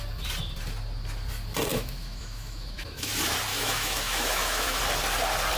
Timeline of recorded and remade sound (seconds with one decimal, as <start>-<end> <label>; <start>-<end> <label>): 0.0-1.7 recorded; 1.7-3.1 remade; 3.1-3.5 recorded; 3.5-4.8 remade; 4.8-5.6 recorded

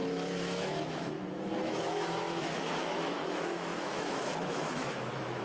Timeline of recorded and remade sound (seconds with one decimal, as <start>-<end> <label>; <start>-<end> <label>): 0.0-5.4 remade

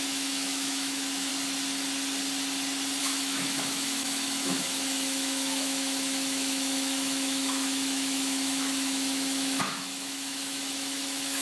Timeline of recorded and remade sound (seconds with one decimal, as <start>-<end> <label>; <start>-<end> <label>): 0.0-1.3 remade; 1.3-3.0 recorded; 3.0-11.4 remade